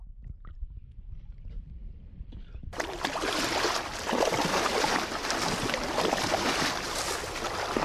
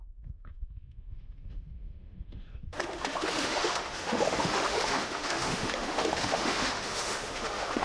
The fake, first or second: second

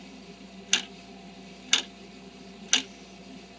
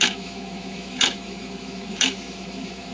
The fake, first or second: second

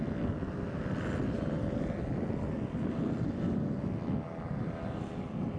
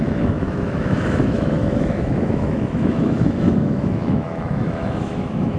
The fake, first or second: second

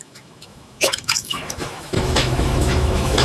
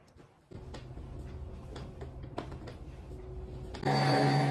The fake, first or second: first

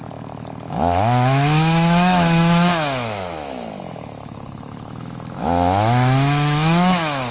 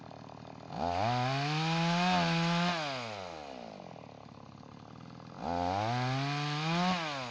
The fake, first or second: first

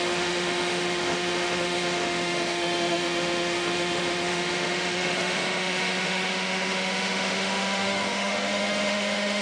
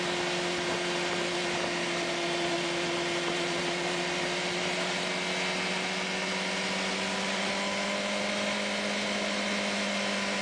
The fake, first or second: first